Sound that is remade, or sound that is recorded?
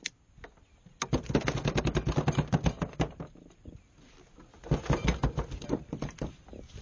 recorded